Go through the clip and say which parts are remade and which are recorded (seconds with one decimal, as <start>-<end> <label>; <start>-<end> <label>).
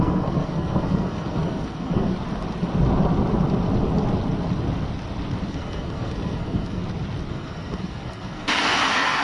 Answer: 0.0-2.1 remade; 2.1-5.5 recorded; 5.5-6.8 remade; 6.8-7.3 recorded; 7.3-9.2 remade